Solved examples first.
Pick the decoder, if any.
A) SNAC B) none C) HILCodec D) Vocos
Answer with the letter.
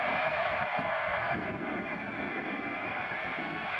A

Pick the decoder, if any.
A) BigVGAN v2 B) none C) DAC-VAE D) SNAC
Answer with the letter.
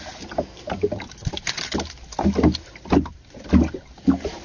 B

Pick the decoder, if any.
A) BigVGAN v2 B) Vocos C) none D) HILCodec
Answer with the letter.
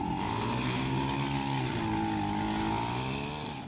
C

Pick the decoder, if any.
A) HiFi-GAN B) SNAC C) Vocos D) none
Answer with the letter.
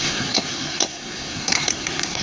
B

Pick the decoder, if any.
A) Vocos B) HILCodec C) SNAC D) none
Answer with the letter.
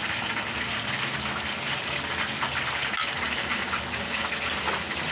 D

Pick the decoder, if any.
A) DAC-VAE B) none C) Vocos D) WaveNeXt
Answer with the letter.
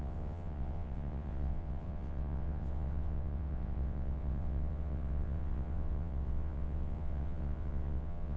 D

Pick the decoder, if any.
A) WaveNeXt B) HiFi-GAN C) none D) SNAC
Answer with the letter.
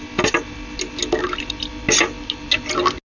C